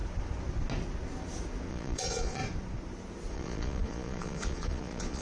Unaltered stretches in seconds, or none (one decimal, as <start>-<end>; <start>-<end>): 0.0-1.7; 2.4-3.3